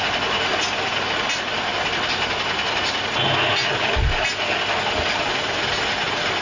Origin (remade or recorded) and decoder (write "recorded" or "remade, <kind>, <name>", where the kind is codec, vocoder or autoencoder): recorded